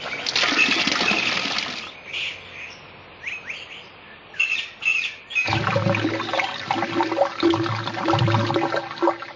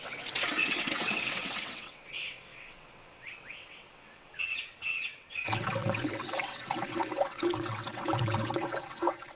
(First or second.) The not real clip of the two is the second